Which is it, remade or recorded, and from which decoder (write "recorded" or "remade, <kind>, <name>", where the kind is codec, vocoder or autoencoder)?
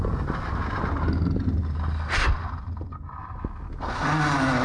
recorded